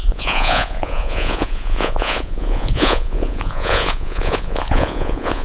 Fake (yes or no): yes